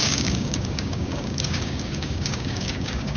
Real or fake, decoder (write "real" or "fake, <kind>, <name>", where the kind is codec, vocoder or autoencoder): fake, codec, DAC